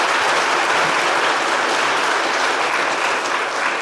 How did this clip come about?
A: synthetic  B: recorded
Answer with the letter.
B